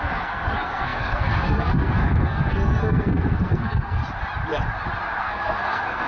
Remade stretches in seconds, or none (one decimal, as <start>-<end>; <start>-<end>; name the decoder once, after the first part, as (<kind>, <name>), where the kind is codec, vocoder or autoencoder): 0.0-4.0 (codec, SNAC); 5.2-6.1